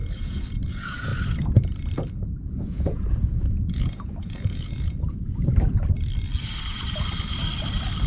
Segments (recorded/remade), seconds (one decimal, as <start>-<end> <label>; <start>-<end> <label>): 0.0-1.1 remade; 1.1-2.1 recorded; 2.1-5.5 remade; 5.5-8.1 recorded